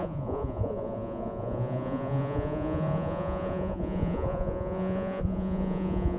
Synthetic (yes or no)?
yes